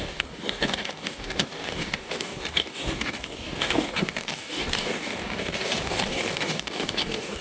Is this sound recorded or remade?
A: remade